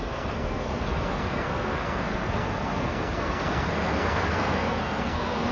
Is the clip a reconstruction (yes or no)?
yes